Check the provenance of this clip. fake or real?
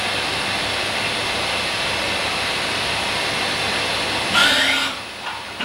real